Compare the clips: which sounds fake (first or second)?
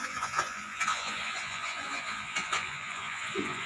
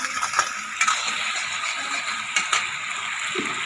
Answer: first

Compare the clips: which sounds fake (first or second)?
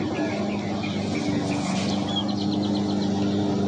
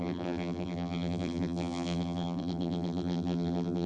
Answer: second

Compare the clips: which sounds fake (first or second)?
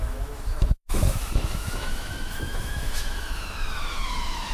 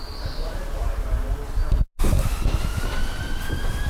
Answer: first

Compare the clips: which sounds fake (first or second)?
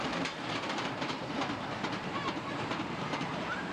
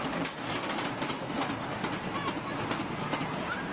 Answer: first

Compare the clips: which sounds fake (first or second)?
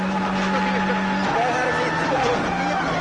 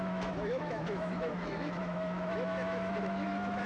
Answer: second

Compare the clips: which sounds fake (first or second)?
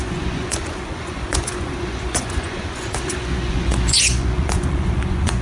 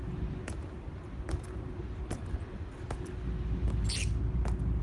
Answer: first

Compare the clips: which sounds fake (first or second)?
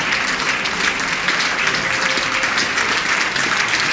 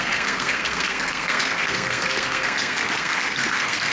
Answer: second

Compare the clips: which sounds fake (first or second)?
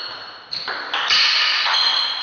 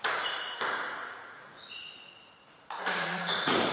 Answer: second